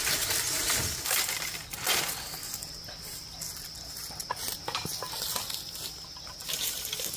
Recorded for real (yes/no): yes